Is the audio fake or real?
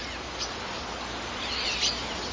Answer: real